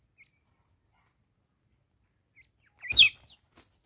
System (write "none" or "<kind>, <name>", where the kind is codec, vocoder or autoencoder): none